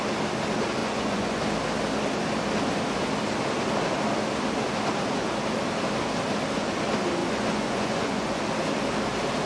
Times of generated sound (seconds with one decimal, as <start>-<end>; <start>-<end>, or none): 0.8-1.4; 7.2-8.4